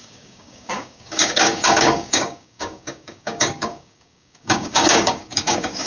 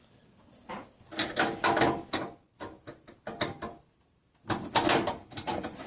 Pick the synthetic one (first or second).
first